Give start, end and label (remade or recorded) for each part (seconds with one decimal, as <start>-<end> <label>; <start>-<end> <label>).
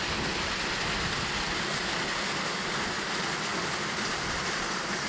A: 0.0-5.1 recorded